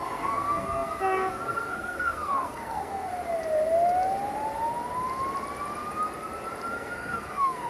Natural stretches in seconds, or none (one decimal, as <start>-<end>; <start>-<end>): 3.1-6.7